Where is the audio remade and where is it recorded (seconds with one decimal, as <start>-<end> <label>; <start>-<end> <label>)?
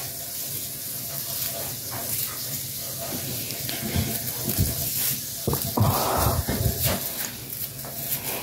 0.0-8.4 recorded